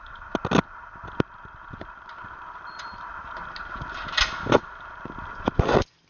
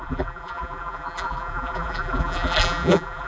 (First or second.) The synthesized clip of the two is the second